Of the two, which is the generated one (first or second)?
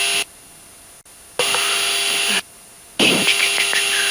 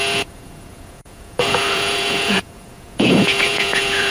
second